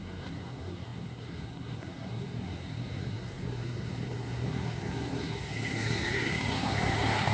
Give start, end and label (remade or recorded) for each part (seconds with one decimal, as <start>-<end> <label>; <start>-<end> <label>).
0.0-7.3 remade